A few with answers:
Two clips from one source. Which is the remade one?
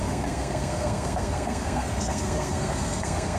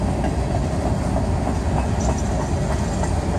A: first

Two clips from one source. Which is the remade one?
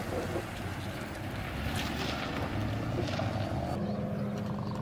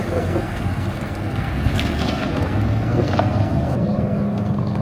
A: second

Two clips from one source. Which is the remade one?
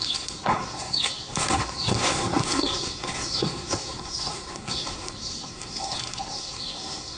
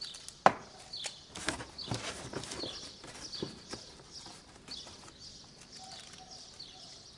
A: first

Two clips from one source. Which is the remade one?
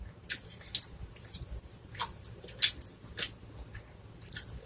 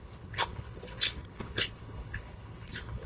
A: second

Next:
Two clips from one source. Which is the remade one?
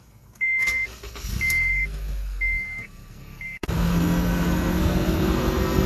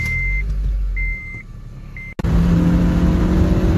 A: first